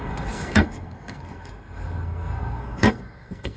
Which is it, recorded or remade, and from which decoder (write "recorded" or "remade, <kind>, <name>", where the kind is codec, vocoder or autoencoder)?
remade, codec, SNAC